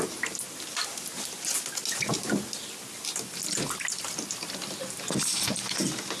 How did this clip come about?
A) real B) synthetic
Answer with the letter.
A